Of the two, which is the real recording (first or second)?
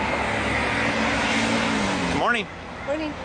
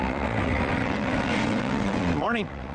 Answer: first